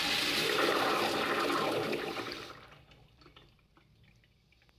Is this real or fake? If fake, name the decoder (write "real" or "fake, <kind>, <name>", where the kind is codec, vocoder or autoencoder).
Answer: fake, vocoder, BigVGAN v2